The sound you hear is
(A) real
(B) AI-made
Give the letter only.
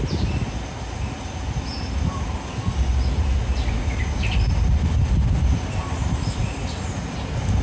A